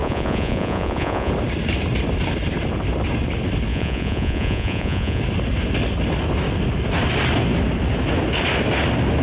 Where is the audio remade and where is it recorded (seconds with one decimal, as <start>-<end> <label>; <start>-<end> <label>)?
0.0-1.3 remade; 1.3-3.7 recorded; 3.7-5.2 remade; 5.2-9.2 recorded